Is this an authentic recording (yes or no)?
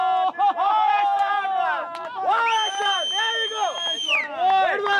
yes